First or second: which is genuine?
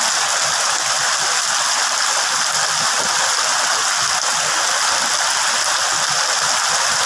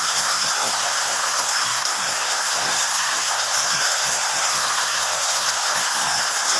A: first